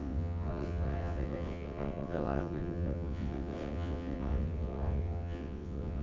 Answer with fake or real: fake